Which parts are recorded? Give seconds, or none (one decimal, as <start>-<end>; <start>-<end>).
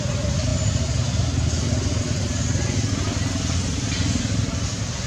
0.0-5.1